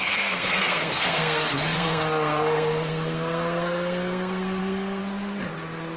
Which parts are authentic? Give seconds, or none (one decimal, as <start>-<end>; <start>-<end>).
5.0-6.0

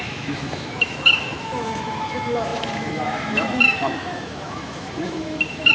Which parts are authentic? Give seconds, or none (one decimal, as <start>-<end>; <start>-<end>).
none

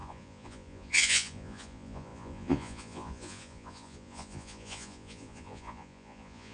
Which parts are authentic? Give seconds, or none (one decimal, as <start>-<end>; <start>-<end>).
none

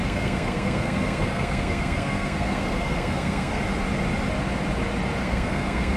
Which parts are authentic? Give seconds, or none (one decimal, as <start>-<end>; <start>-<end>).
3.6-5.2

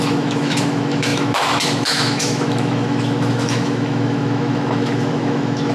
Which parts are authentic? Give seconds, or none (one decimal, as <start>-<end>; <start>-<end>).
none